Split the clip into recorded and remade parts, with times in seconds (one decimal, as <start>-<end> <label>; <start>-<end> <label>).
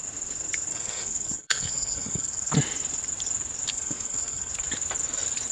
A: 0.0-0.7 recorded; 0.7-2.5 remade; 2.5-3.7 recorded; 3.7-4.5 remade; 4.5-5.5 recorded